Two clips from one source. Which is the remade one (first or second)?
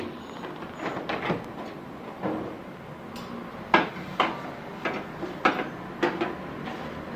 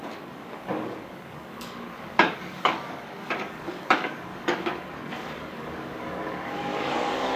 second